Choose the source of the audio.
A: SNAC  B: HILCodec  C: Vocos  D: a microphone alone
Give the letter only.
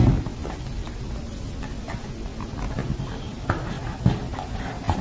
D